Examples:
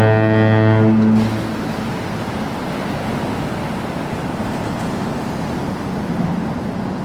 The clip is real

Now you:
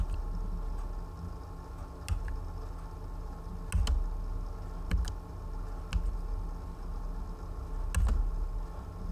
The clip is real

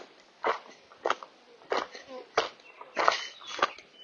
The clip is real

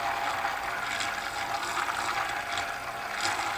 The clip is real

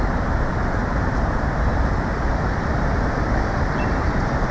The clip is fake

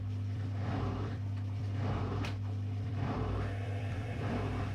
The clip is fake